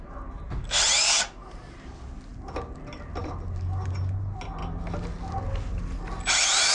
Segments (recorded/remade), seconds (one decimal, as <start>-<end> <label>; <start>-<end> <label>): 0.0-6.7 recorded